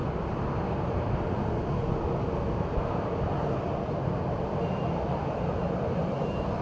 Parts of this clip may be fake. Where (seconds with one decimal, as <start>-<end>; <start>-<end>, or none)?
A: 4.0-6.6